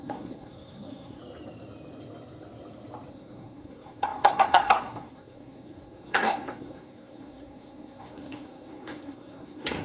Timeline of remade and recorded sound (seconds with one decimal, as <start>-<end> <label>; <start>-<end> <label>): 0.0-1.2 remade; 1.2-3.1 recorded; 3.1-9.8 remade